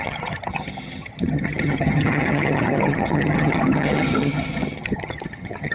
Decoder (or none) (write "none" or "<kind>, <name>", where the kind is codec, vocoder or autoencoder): vocoder, HiFi-GAN